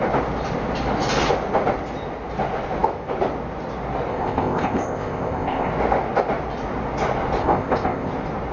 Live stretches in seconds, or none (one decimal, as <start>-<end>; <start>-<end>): 0.0-4.1; 5.7-7.4; 8.1-8.5